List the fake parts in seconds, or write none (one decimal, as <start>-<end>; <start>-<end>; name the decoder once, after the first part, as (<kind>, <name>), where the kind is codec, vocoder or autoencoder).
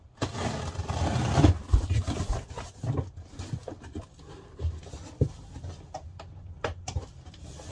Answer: none